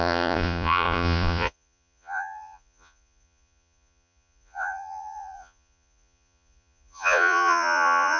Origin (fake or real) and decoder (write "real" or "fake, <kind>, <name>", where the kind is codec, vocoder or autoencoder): fake, vocoder, Vocos